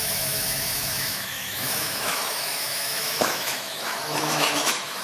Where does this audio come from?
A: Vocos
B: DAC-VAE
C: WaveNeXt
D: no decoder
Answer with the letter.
B